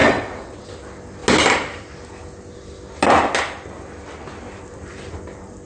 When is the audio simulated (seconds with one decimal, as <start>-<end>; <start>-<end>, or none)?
0.0-0.6